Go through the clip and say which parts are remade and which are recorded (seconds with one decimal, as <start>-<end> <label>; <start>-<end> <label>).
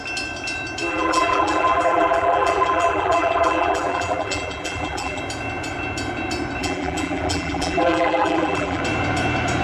0.0-0.9 recorded; 0.9-5.2 remade; 5.2-6.6 recorded; 6.6-8.8 remade; 8.8-9.6 recorded